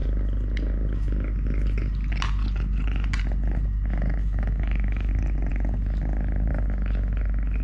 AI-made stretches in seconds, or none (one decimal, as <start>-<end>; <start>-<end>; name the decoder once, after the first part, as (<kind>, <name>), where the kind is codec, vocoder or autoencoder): 4.2-5.1 (autoencoder, DAC-VAE)